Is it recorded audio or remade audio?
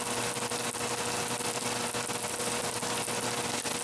recorded